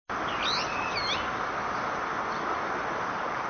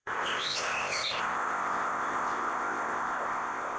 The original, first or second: first